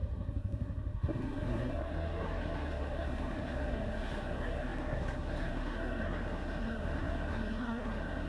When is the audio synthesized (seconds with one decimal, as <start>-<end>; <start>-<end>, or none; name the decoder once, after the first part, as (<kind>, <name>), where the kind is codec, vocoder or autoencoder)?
0.0-8.3 (codec, SNAC)